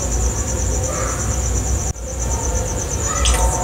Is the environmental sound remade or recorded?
recorded